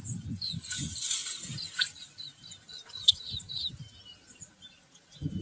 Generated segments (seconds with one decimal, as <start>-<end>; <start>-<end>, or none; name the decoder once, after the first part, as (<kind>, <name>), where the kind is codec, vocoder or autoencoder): none